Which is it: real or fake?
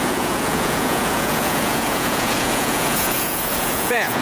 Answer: fake